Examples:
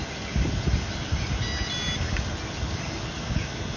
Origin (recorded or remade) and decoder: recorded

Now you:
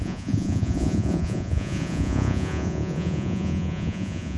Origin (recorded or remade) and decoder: remade, vocoder, Vocos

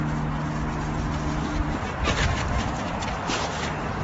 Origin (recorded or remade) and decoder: recorded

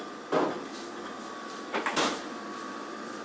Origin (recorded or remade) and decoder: recorded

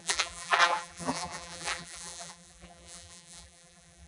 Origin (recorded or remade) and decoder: remade, vocoder, BigVGAN v2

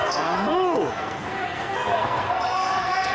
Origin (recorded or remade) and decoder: remade, codec, SNAC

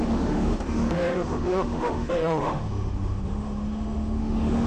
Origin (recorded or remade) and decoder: remade, autoencoder, DAC-VAE